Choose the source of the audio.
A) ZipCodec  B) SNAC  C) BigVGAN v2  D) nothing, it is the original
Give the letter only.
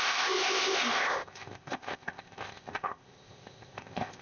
A